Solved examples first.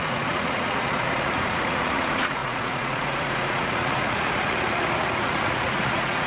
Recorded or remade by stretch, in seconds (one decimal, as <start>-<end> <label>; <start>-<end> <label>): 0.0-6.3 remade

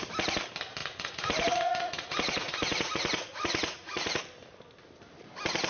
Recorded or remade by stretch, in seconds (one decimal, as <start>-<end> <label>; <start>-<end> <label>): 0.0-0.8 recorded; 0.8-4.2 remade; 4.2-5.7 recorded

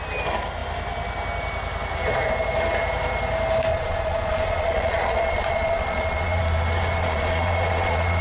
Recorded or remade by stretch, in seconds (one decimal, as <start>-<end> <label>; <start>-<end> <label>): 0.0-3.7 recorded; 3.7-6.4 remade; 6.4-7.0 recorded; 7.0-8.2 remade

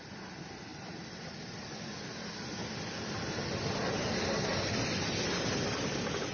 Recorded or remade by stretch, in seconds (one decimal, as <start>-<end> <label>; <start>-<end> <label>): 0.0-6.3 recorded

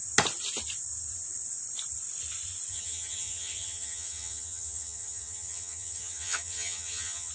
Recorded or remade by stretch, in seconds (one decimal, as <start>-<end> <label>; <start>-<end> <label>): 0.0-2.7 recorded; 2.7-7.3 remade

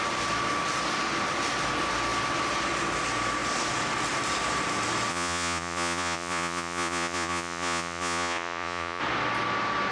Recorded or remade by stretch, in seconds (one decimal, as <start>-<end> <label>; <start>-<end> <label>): 0.0-5.1 recorded; 5.1-9.0 remade; 9.0-9.9 recorded